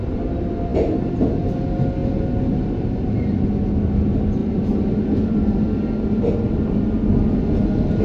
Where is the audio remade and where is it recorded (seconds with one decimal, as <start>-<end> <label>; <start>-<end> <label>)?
0.0-4.4 recorded; 4.4-5.6 remade; 5.6-8.0 recorded